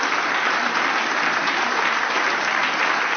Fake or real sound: real